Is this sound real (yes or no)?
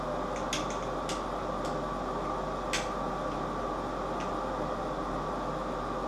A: yes